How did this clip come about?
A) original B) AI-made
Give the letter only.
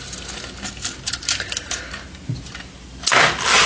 A